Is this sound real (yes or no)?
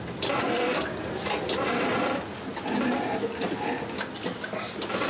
yes